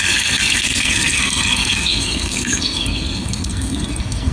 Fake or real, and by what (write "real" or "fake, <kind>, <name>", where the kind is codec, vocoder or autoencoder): fake, codec, SNAC